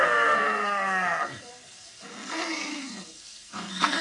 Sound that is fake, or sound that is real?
fake